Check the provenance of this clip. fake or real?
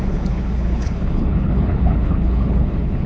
fake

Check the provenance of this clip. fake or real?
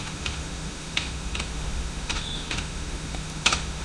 fake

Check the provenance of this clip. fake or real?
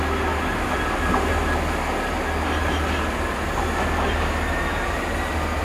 real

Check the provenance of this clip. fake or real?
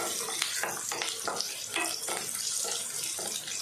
real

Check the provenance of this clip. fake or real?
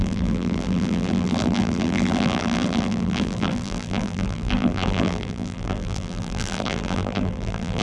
fake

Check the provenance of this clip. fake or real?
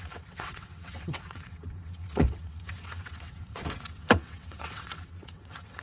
fake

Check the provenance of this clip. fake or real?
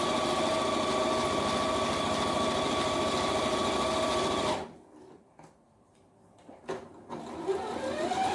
real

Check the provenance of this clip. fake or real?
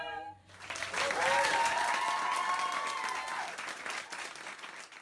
real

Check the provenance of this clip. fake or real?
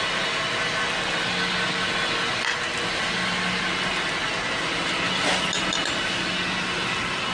real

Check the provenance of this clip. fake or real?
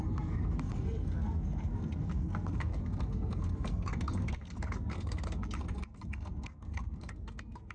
fake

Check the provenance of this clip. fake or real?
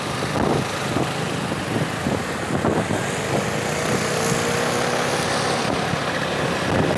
real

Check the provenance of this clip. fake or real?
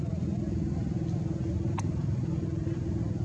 real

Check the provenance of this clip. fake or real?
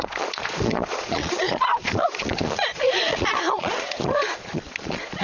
fake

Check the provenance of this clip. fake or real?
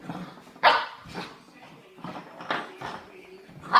real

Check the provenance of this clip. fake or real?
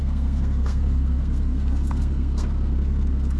fake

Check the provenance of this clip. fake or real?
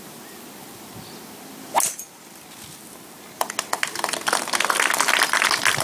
real